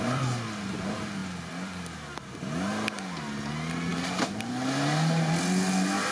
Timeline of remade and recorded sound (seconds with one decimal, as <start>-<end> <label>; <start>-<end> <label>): 0.0-6.1 recorded